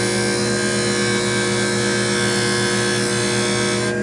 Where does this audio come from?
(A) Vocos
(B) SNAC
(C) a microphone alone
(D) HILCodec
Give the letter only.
C